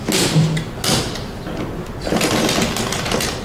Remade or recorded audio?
recorded